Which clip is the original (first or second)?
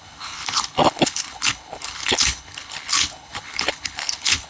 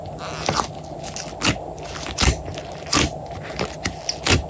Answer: second